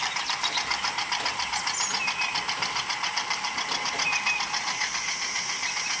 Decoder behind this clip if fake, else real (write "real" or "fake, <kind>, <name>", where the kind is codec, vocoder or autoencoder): fake, vocoder, BigVGAN v2